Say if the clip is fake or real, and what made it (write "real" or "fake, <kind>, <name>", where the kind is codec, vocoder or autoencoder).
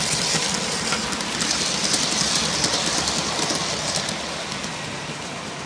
real